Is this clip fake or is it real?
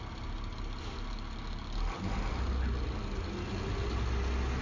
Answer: real